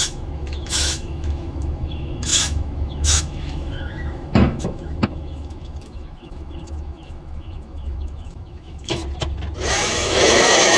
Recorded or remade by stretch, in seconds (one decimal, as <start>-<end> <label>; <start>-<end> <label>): 0.0-9.0 remade; 9.0-9.7 recorded; 9.7-10.8 remade